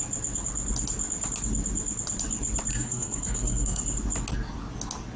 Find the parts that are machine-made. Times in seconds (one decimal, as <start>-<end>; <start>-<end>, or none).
2.7-3.8